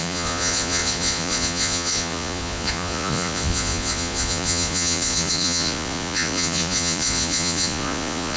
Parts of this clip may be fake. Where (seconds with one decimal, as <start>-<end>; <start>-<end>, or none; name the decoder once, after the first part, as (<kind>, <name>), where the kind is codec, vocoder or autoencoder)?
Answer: 0.0-8.4 (vocoder, Vocos)